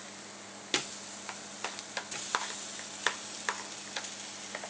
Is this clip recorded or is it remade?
recorded